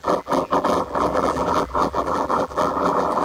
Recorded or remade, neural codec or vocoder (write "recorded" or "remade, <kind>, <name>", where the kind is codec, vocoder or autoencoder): remade, vocoder, BigVGAN v2